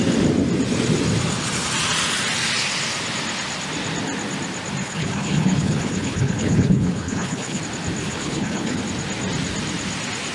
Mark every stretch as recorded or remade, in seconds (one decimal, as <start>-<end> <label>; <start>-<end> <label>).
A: 0.0-4.8 recorded; 4.8-7.6 remade; 7.6-8.0 recorded; 8.0-8.8 remade; 8.8-10.3 recorded